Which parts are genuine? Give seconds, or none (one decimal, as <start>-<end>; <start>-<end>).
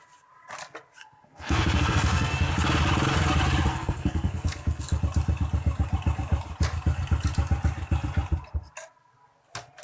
0.0-1.0; 2.5-3.7; 5.0-9.8